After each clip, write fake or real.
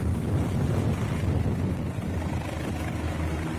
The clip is real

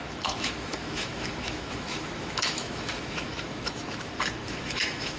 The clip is fake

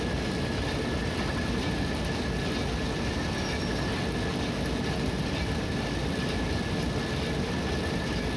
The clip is real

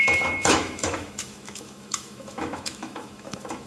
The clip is fake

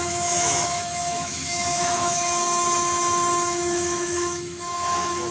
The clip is fake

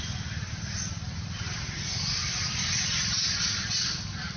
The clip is real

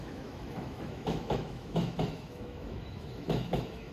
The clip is fake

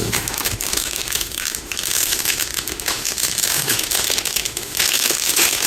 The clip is fake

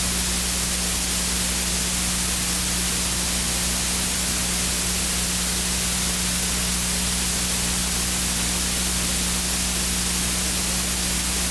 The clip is real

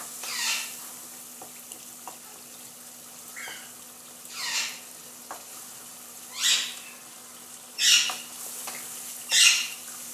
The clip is real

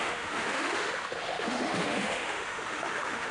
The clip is fake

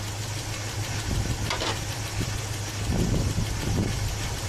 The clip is real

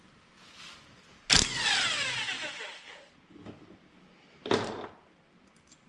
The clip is real